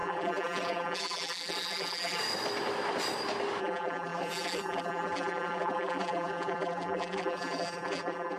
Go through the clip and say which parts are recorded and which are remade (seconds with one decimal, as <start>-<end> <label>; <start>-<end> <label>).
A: 0.0-2.2 remade; 2.2-3.6 recorded; 3.6-8.4 remade